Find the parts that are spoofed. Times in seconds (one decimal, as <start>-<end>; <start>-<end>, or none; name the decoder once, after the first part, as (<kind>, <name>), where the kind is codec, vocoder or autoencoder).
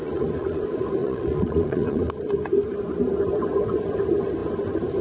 0.0-0.6 (vocoder, Vocos); 1.0-2.1